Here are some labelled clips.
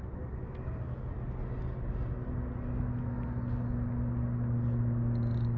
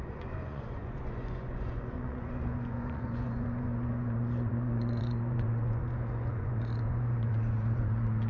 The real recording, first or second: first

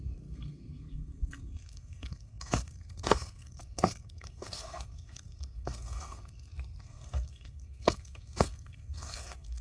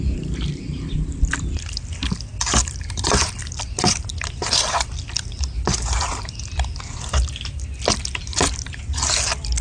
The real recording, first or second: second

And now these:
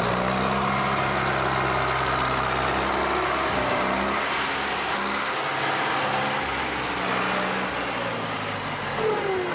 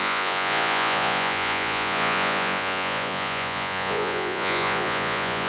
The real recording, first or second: first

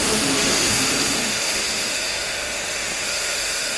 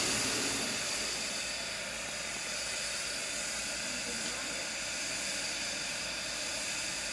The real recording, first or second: second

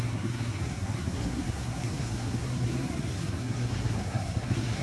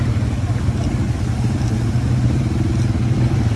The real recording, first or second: second